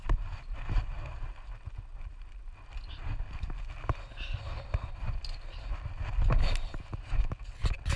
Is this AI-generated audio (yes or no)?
no